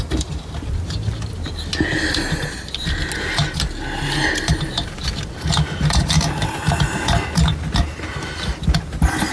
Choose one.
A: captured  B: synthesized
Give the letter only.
A